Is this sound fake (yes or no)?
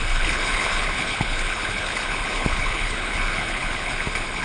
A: yes